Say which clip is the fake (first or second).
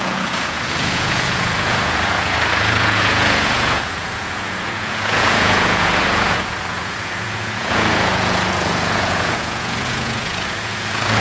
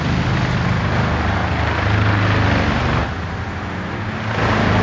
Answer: first